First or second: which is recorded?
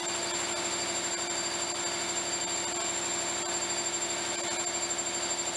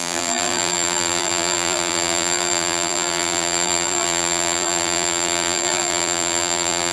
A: first